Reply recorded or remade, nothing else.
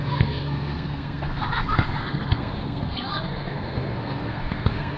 remade